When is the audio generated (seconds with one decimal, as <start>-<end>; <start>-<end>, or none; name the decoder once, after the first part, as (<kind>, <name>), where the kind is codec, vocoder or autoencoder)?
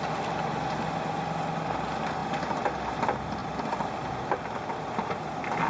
none